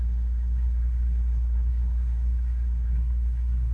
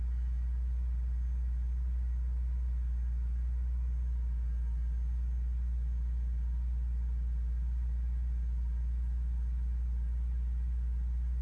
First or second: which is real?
second